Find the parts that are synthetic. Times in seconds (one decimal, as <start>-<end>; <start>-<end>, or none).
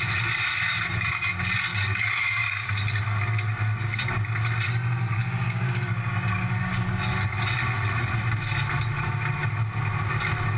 0.5-1.1; 1.7-2.7; 5.2-7.0